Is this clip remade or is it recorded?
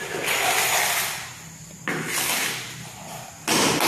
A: recorded